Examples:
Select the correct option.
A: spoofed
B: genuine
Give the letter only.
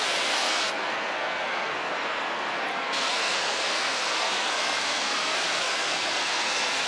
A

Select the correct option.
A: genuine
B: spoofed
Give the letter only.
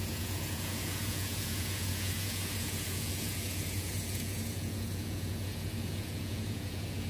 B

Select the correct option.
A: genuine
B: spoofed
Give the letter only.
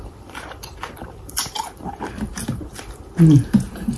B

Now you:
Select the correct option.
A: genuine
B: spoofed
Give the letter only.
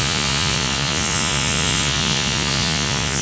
B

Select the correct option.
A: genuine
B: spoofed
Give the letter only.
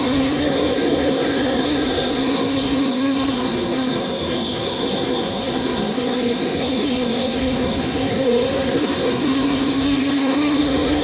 B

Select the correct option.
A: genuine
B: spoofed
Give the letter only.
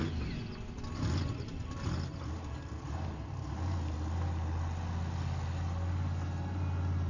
A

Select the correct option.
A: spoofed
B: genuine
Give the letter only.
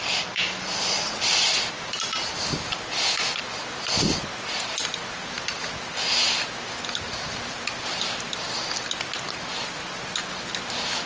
B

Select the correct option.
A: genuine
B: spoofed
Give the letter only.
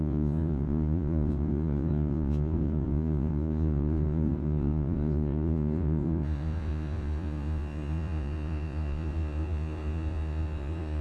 B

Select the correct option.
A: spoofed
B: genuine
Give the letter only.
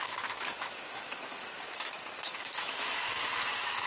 A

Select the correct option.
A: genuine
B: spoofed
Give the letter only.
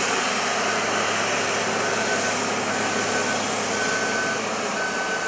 A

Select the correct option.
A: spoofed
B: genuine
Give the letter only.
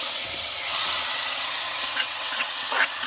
A